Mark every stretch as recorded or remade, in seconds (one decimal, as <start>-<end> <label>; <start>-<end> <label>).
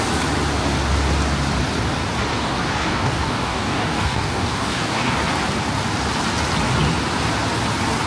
0.0-2.3 recorded; 2.3-5.2 remade; 5.2-8.1 recorded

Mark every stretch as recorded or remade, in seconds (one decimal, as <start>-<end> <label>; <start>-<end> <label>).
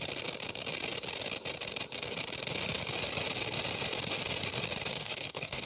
0.0-4.9 recorded; 4.9-5.7 remade